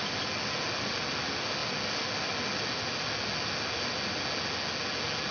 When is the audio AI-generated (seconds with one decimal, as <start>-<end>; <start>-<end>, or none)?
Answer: none